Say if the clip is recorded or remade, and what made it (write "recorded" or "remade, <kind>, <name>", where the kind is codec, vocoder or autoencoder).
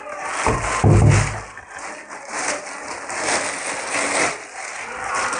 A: recorded